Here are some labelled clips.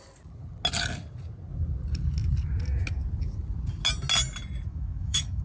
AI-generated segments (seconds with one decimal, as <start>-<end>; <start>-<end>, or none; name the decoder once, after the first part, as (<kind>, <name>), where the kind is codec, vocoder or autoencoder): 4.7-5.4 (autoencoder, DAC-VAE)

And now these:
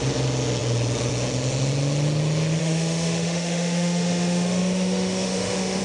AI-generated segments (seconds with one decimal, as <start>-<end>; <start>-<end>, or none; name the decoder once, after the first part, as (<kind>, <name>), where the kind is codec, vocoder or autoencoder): 2.6-5.8 (autoencoder, DAC-VAE)

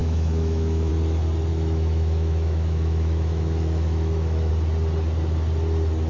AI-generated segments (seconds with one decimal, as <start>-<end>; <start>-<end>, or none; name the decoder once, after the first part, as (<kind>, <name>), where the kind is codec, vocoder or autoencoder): 0.0-0.9 (autoencoder, DAC-VAE); 1.5-4.5

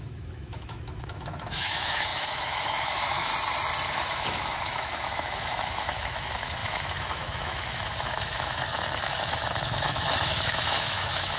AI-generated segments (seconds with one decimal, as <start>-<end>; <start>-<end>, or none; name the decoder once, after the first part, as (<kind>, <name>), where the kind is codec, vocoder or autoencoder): 0.0-3.3 (autoencoder, DAC-VAE); 3.9-11.4

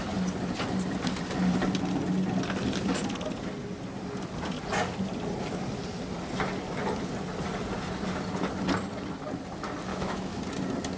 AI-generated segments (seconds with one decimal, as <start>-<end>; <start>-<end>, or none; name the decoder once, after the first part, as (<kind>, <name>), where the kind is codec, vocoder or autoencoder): 9.9-10.4 (autoencoder, DAC-VAE)

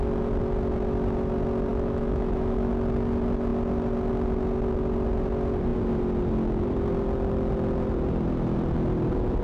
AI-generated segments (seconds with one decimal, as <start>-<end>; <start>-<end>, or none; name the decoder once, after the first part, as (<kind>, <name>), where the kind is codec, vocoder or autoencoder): 1.7-2.7 (autoencoder, DAC-VAE)

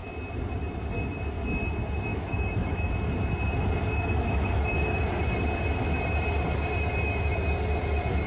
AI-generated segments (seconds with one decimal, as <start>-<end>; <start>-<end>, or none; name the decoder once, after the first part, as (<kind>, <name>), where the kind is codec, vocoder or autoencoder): 2.1-2.9 (autoencoder, DAC-VAE); 3.9-5.2